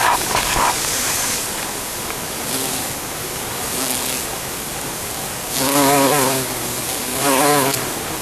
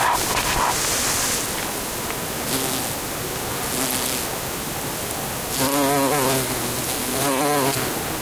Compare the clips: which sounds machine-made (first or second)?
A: first